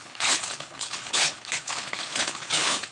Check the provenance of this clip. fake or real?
fake